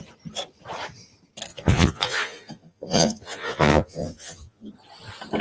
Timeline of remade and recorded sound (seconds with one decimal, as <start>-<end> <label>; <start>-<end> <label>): 0.0-1.5 recorded; 1.5-4.7 remade; 4.7-5.4 recorded